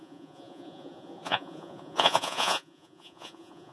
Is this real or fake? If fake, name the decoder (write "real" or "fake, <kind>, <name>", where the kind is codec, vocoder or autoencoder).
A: fake, vocoder, Vocos